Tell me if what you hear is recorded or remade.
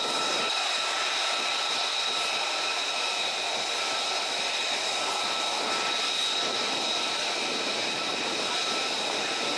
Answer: recorded